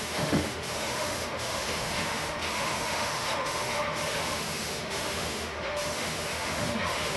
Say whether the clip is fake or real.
fake